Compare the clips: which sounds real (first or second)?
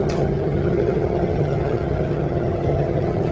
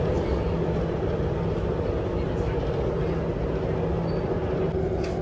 second